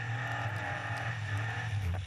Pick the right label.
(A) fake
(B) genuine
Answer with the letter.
A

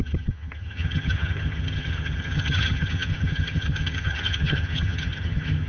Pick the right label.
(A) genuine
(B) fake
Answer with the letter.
B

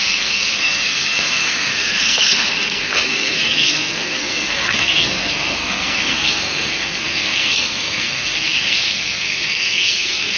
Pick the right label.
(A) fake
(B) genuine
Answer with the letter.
A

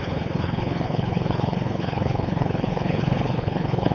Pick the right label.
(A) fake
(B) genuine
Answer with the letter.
A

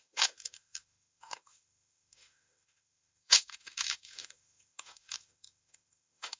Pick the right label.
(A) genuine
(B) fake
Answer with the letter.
B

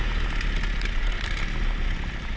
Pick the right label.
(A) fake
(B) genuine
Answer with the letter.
B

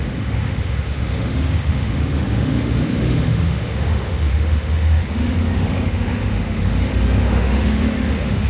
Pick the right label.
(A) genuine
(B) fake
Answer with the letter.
B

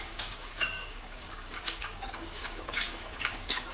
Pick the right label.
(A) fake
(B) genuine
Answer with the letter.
A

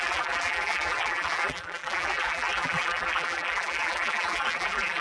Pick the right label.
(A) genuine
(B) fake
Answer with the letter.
B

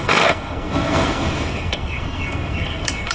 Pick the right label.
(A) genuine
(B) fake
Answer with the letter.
B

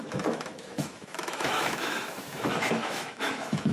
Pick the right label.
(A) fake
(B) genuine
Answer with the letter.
A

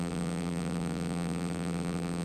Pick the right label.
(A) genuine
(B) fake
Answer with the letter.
B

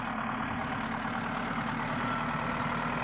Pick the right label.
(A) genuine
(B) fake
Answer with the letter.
A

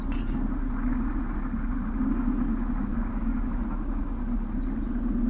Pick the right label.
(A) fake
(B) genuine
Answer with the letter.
B